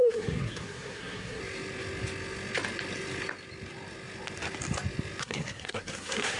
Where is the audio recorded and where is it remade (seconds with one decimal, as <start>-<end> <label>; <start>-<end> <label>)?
0.0-1.4 remade; 1.4-5.2 recorded; 5.2-6.4 remade